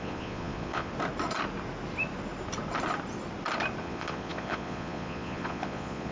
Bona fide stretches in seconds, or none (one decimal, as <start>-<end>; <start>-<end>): 0.9-3.8